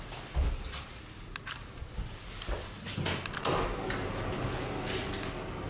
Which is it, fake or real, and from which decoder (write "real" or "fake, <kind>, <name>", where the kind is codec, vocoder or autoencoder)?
real